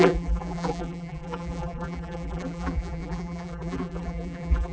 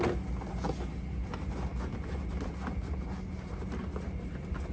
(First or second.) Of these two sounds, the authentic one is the second